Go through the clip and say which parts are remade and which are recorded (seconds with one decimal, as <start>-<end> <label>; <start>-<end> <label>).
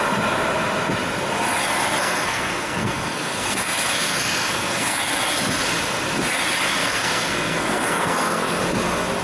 0.0-2.0 recorded; 2.0-5.0 remade; 5.0-6.8 recorded; 6.8-8.6 remade; 8.6-9.2 recorded